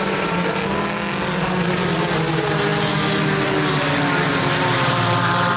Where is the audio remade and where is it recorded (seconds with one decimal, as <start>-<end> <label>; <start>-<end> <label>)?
0.0-0.6 remade; 0.6-2.3 recorded; 2.3-2.7 remade; 2.7-4.6 recorded; 4.6-5.6 remade